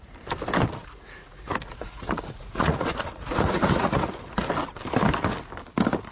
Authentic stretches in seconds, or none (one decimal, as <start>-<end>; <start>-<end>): 0.0-0.8; 4.5-6.1

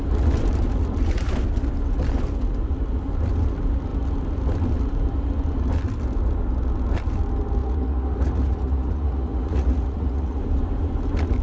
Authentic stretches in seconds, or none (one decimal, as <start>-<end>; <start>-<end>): 0.0-7.6; 10.4-11.4

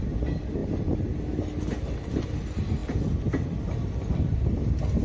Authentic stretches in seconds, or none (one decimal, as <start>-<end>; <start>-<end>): 0.0-5.0

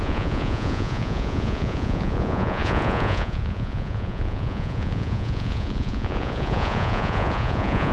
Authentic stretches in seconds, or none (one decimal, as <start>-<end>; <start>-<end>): none

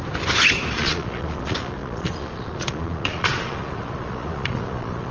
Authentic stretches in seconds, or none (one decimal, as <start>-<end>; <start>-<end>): 0.0-0.7